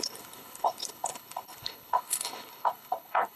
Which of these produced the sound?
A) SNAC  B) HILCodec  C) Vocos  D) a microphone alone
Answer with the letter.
B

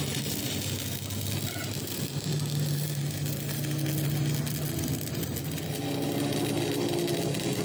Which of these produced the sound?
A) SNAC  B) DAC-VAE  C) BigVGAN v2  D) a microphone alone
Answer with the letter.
D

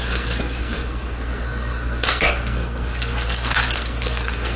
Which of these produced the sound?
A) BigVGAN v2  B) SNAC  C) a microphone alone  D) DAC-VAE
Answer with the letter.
B